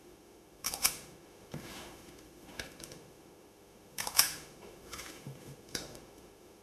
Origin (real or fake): fake